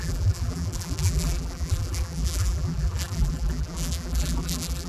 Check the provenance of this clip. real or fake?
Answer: fake